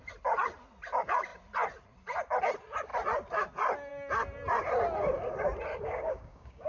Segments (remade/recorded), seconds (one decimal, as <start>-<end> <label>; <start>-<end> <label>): 0.0-5.7 recorded; 5.7-6.7 remade